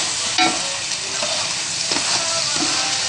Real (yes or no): yes